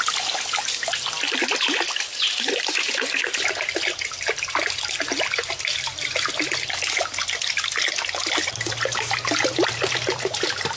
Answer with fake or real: real